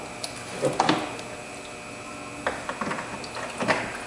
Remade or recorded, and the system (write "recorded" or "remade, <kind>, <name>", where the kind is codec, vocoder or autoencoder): recorded